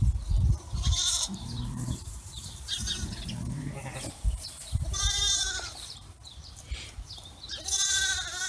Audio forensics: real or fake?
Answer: fake